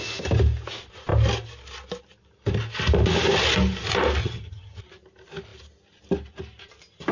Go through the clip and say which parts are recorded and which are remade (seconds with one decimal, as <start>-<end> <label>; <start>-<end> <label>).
0.0-4.2 recorded; 4.2-4.8 remade; 4.8-7.1 recorded